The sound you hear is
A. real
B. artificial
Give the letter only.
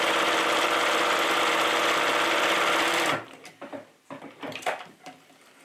B